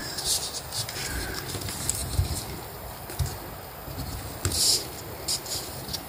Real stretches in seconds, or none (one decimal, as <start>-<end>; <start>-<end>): 0.0-6.1

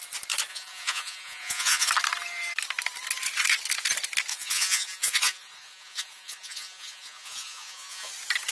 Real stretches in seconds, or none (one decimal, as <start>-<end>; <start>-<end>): 0.0-0.5; 1.9-4.3; 8.1-8.5

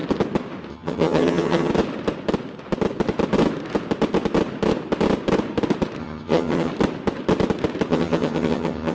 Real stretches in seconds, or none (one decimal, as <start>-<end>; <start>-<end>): 0.0-0.7; 1.7-6.0; 6.7-7.9

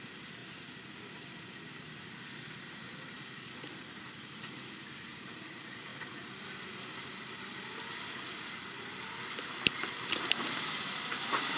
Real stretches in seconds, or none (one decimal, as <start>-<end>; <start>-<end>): 0.4-3.0; 5.9-9.3

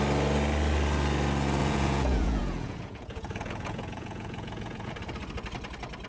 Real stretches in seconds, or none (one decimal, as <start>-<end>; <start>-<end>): 0.0-1.6; 4.9-6.1

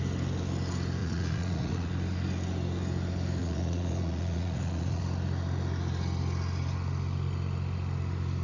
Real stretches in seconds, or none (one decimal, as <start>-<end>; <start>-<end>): 0.0-1.0; 1.9-3.4; 5.0-8.4